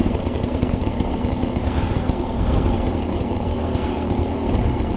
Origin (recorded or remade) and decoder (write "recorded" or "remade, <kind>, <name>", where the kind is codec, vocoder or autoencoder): remade, codec, SNAC